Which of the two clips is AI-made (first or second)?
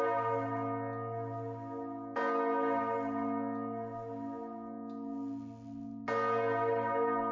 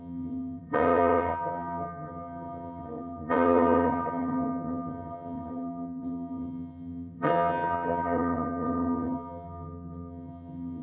second